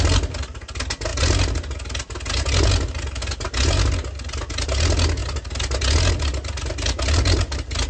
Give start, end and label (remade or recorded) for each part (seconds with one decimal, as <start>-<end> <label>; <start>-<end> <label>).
0.0-7.9 recorded